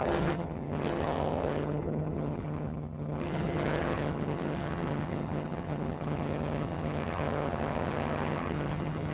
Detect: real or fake fake